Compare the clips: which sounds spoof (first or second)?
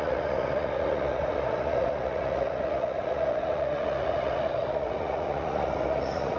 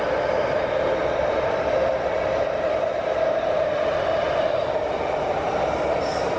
first